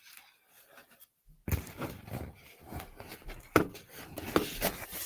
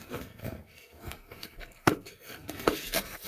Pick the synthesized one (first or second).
second